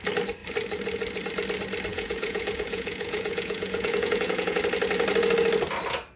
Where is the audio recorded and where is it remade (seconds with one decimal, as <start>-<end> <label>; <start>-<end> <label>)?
0.0-1.9 recorded; 1.9-4.6 remade; 4.6-6.2 recorded